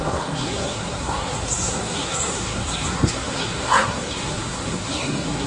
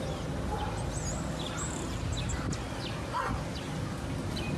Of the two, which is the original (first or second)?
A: second